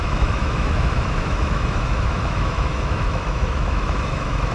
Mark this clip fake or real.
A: fake